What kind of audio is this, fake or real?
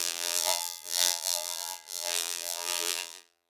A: fake